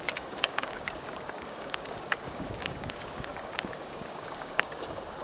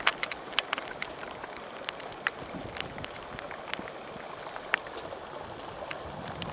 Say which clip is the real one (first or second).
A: second